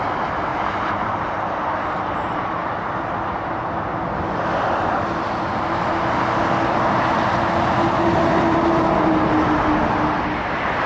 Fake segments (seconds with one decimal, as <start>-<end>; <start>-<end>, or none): 0.5-1.4